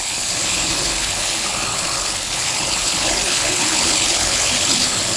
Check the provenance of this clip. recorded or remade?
remade